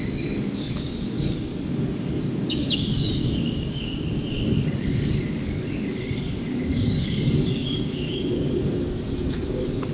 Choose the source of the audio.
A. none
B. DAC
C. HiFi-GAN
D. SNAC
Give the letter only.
B